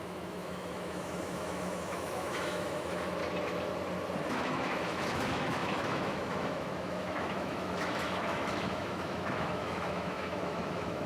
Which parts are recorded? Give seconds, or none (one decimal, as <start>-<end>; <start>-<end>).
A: 3.2-4.3